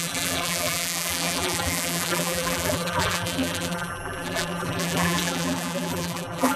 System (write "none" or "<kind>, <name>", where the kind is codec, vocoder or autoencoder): vocoder, BigVGAN v2